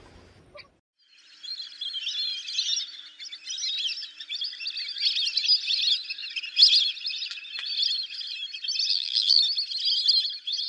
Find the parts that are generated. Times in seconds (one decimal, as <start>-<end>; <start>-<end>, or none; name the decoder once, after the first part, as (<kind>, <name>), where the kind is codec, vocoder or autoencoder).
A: 8.9-9.4 (vocoder, BigVGAN v2)